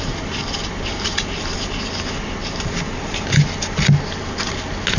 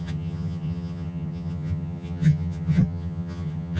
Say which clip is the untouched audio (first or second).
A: first